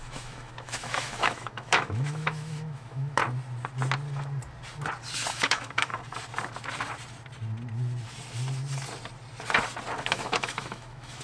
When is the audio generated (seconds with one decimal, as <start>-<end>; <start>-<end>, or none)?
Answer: 0.0-3.2; 5.3-5.9; 10.0-11.2